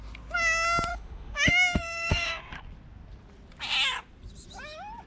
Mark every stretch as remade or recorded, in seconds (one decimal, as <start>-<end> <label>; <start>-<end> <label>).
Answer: 0.0-0.9 recorded; 0.9-2.4 remade; 2.4-5.1 recorded